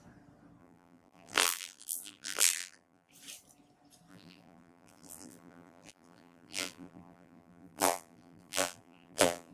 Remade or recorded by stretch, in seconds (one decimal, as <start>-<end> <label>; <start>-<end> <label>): 0.0-0.6 recorded; 0.6-3.1 remade; 3.1-4.1 recorded; 4.1-9.5 remade